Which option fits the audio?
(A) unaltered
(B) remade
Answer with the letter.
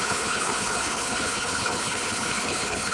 B